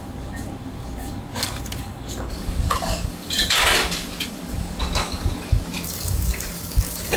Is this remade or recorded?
remade